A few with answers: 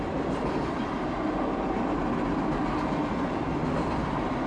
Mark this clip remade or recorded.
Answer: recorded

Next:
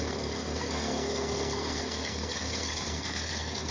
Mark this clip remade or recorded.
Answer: remade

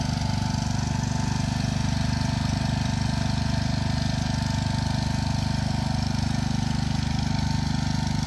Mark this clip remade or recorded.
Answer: recorded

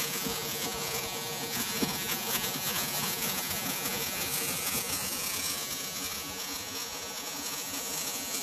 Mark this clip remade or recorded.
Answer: remade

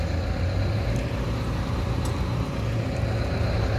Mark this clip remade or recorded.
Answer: recorded